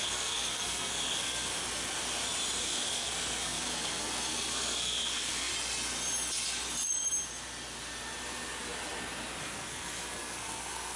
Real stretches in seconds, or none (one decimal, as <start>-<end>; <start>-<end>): 1.5-2.6; 5.5-9.4

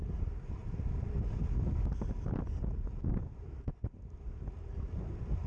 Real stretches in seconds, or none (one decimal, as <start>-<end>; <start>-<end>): 0.0-5.5

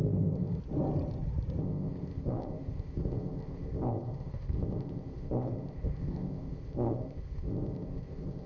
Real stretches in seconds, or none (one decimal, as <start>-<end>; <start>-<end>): 0.6-1.6

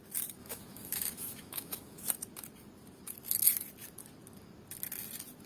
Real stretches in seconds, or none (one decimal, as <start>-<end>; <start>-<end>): 0.0-0.4; 2.1-5.5

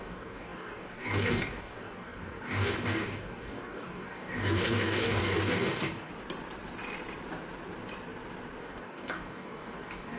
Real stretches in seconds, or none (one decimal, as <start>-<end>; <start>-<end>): 6.1-8.6

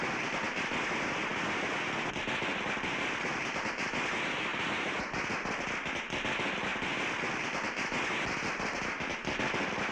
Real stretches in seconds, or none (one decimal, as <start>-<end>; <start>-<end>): 0.0-9.9